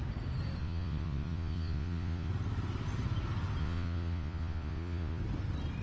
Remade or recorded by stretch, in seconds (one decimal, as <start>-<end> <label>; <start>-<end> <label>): 0.0-0.6 recorded; 0.6-2.3 remade; 2.3-3.6 recorded; 3.6-5.2 remade; 5.2-5.8 recorded